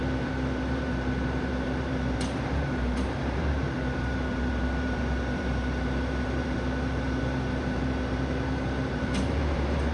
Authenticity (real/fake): fake